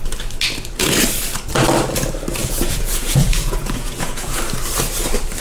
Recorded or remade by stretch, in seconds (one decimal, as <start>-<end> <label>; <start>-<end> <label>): 0.0-2.4 recorded; 2.4-4.4 remade; 4.4-5.4 recorded